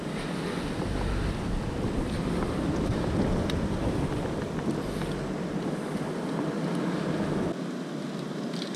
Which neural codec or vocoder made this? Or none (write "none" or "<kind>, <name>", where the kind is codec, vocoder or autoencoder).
none